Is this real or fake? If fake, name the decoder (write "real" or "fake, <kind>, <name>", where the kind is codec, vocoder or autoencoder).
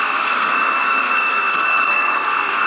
fake, codec, SNAC